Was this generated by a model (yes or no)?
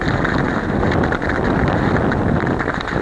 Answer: no